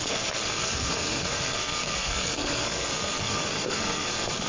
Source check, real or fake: fake